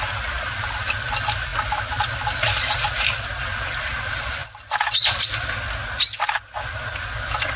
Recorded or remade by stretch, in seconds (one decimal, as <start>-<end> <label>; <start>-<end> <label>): 0.0-7.6 recorded